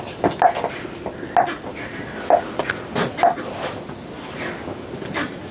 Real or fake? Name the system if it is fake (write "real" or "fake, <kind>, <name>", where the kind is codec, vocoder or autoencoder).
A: real